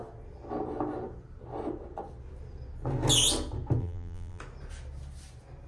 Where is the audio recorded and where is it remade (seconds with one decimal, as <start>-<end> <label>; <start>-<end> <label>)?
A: 0.0-3.8 recorded; 3.8-4.4 remade; 4.4-5.7 recorded